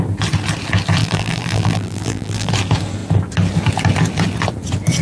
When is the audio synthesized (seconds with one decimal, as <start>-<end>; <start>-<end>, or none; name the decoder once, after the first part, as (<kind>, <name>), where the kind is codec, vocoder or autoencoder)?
1.0-2.5 (vocoder, BigVGAN v2)